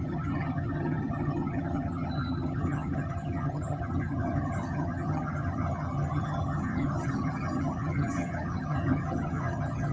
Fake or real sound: fake